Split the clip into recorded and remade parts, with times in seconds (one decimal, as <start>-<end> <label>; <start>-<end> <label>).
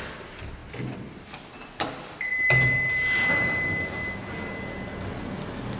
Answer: 0.0-5.8 recorded